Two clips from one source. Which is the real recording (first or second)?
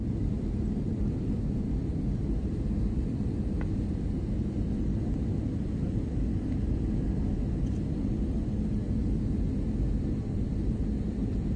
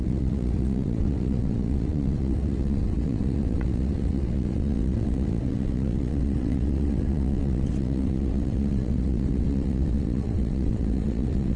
first